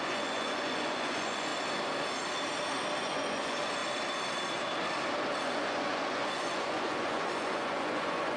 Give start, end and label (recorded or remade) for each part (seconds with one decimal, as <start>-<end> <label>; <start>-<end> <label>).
0.0-1.5 remade; 1.5-3.0 recorded; 3.0-3.8 remade; 3.8-5.4 recorded; 5.4-8.4 remade